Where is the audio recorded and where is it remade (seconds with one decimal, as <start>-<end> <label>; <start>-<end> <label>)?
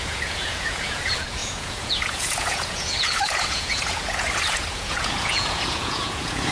0.0-6.5 remade